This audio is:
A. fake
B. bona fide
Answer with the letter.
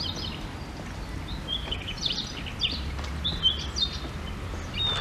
B